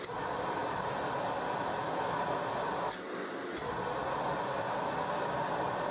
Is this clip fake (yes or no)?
no